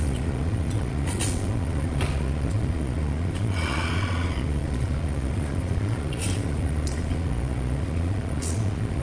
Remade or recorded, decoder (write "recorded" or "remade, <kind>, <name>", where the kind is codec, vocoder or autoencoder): remade, vocoder, Vocos